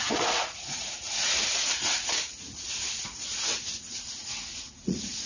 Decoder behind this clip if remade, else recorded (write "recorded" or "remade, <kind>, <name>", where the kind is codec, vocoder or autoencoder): remade, vocoder, Vocos